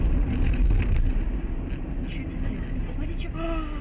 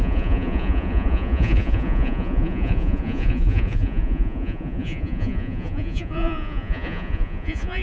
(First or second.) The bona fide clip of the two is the first